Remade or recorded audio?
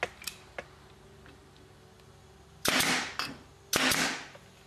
recorded